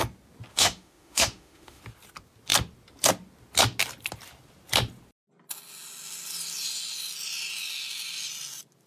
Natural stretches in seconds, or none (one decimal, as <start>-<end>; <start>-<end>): 0.0-0.5; 1.8-8.9